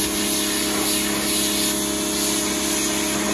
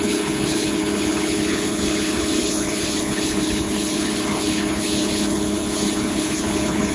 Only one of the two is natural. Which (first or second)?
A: first